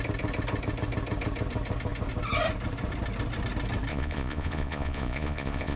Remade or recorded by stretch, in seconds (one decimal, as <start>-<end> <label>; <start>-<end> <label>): 0.0-3.9 recorded; 3.9-5.8 remade